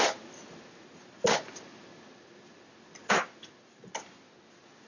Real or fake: real